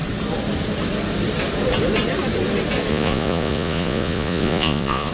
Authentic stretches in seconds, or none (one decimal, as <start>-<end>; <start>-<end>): 0.0-2.9